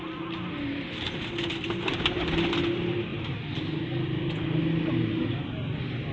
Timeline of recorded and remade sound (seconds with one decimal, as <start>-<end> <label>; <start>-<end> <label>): 0.0-6.1 recorded